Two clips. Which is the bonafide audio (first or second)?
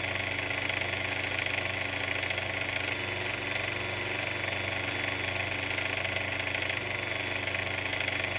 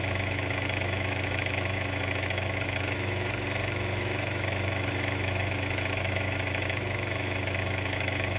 first